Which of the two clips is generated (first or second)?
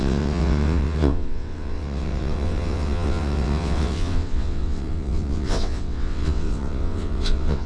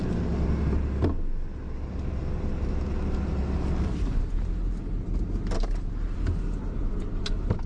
first